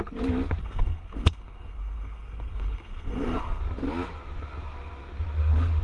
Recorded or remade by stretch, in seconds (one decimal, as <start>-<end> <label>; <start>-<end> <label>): 0.0-0.6 recorded; 0.6-3.6 remade; 3.6-5.8 recorded